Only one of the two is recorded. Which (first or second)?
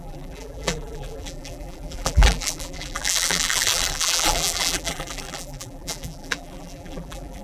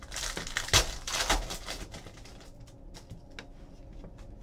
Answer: second